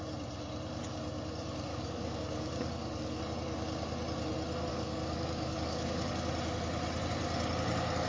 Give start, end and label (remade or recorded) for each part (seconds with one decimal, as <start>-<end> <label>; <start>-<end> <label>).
0.0-1.7 recorded; 1.7-3.2 remade; 3.2-4.7 recorded; 4.7-6.1 remade; 6.1-8.1 recorded